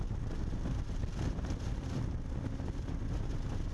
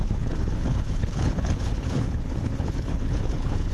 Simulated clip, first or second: second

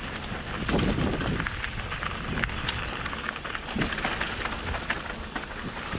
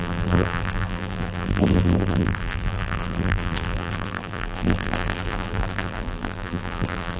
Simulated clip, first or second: second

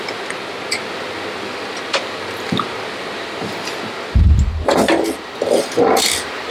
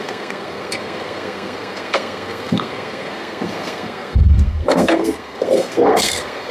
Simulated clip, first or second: second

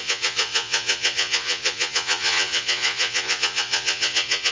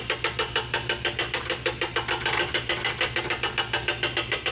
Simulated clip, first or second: first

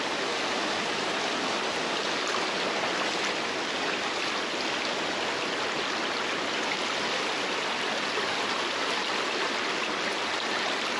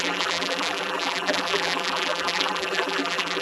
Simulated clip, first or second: second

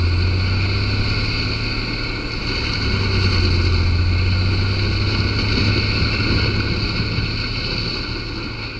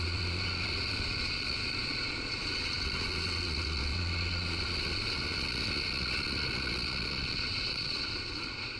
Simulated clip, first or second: second